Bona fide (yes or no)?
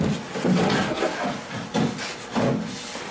yes